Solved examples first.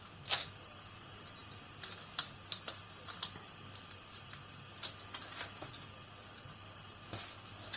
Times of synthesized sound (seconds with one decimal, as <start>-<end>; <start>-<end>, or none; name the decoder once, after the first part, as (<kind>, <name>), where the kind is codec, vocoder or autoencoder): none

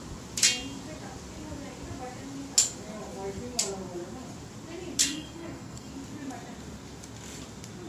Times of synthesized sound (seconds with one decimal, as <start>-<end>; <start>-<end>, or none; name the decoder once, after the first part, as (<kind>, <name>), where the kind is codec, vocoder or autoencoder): 5.0-5.9 (codec, SNAC)

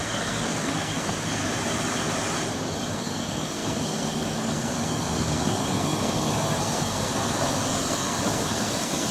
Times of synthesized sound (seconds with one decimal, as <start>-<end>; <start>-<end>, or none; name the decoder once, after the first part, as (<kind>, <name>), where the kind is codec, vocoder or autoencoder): 0.0-1.4 (codec, SNAC); 2.9-9.1

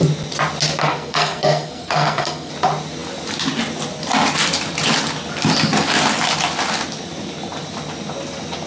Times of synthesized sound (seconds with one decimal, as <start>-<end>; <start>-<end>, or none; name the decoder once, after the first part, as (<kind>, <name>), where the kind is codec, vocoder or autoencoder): 0.8-2.5 (codec, SNAC)

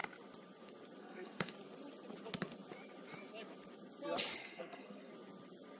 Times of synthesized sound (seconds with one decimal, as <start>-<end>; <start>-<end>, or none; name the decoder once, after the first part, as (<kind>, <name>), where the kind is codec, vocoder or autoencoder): 1.0-1.5 (codec, SNAC); 4.4-5.1

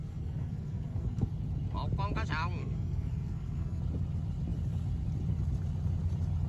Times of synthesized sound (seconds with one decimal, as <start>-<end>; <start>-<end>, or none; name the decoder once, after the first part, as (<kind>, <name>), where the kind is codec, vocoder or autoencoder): 0.0-1.3 (codec, SNAC); 2.6-3.8